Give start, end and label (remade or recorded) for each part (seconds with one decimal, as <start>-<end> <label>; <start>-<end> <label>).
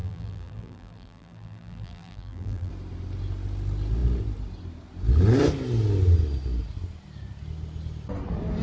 0.0-2.7 remade; 2.7-8.6 recorded